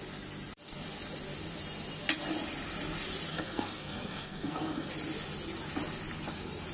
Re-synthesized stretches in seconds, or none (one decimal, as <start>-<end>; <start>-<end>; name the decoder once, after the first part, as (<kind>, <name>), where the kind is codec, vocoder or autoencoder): 3.3-4.9 (codec, SNAC)